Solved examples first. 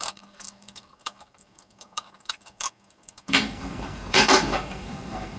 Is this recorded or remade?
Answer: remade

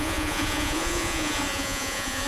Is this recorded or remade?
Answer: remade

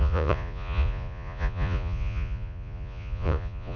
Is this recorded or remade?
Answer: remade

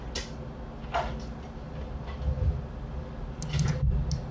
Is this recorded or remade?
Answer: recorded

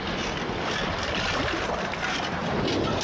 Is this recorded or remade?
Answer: recorded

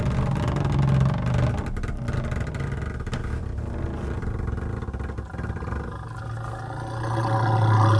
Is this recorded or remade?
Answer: recorded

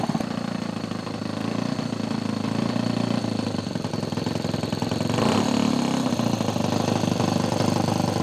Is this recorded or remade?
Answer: recorded